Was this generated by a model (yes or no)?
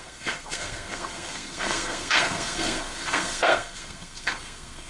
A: yes